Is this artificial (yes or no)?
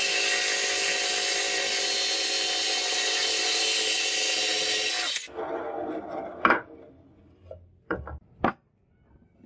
no